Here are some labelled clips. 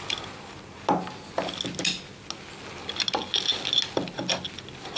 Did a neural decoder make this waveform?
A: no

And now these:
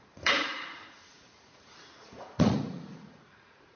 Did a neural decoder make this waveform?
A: yes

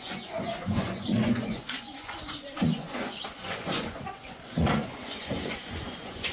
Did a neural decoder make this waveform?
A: yes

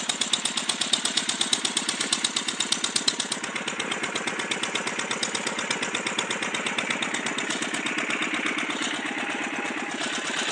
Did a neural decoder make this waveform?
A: no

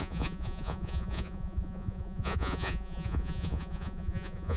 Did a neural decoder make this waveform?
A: yes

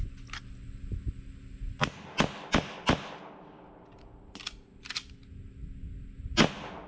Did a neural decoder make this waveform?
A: no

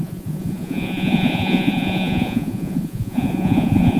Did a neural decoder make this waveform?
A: yes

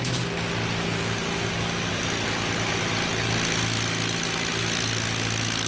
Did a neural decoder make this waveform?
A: no